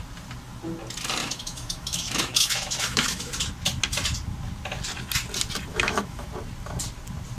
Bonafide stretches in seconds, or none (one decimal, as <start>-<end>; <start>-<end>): 0.0-1.2; 3.3-5.7; 6.3-7.4